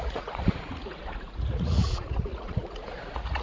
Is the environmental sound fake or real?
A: fake